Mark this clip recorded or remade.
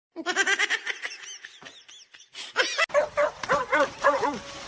recorded